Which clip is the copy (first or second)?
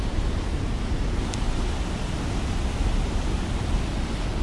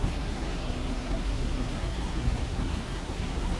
second